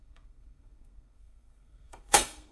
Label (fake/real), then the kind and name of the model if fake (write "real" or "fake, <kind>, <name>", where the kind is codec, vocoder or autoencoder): fake, codec, SNAC